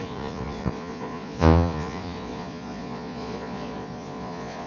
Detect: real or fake fake